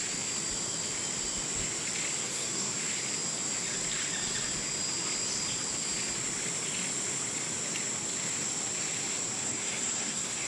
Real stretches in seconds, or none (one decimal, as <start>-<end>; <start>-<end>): 0.0-2.2; 2.7-9.4

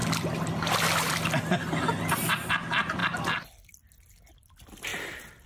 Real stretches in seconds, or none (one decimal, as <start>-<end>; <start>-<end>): 0.0-2.5; 3.0-4.3; 4.9-5.5